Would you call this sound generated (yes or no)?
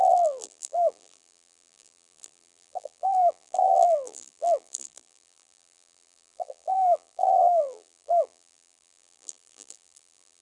yes